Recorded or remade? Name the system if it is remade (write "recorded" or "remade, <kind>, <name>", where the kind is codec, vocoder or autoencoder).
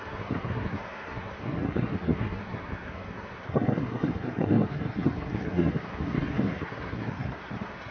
remade, codec, SNAC